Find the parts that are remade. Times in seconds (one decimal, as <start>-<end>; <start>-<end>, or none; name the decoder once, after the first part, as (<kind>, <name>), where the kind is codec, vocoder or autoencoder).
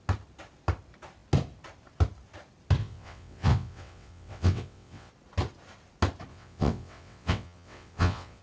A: 2.8-5.1 (vocoder, WaveNeXt); 6.3-8.4